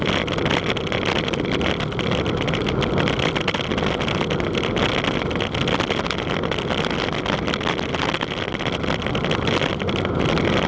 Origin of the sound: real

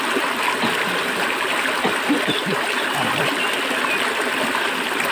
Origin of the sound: real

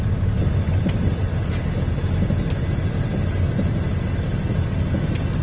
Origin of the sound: real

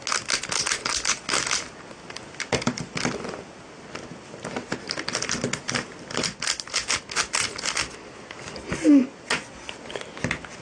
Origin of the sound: real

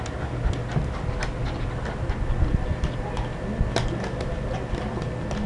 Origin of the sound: real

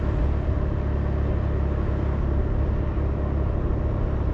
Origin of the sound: real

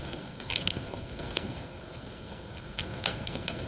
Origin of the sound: fake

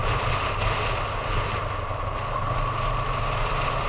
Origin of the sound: real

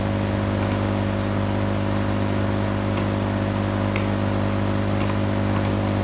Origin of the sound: real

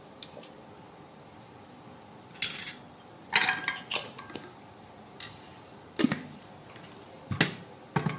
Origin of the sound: real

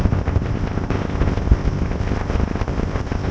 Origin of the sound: fake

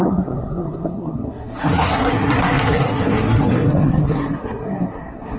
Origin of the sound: fake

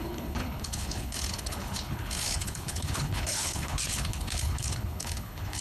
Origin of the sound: fake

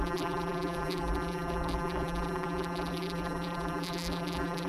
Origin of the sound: fake